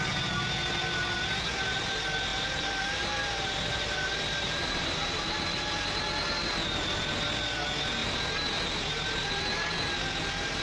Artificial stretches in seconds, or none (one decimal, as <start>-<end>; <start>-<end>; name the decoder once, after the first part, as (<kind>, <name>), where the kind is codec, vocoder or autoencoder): 2.3-5.7 (vocoder, BigVGAN v2)